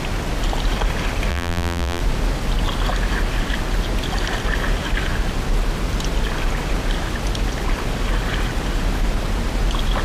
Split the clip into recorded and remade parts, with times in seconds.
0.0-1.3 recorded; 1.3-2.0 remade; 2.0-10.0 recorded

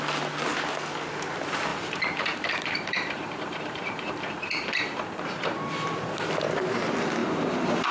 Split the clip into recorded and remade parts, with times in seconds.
0.0-1.7 recorded; 1.7-6.3 remade; 6.3-7.2 recorded; 7.2-7.9 remade

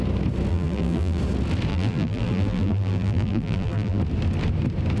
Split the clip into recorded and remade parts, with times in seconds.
0.0-0.5 recorded; 0.5-1.2 remade; 1.2-1.7 recorded; 1.7-4.0 remade; 4.0-5.0 recorded

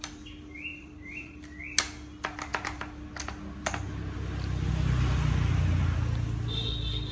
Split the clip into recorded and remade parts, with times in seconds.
0.0-0.7 recorded; 0.7-1.4 remade; 1.4-7.1 recorded

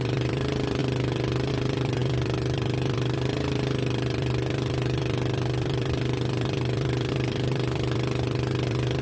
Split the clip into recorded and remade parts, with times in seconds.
0.0-0.8 remade; 0.8-1.5 recorded; 1.5-9.0 remade